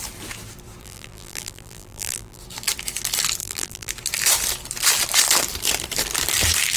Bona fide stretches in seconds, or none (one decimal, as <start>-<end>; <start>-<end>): 0.0-0.8; 2.4-3.4; 3.9-6.8